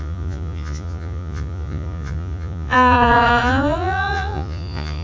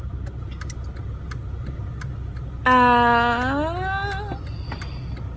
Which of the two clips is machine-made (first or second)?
first